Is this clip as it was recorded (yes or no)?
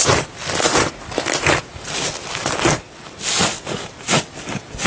yes